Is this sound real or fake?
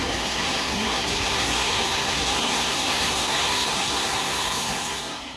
fake